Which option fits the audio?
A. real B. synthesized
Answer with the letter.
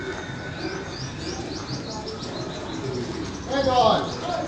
A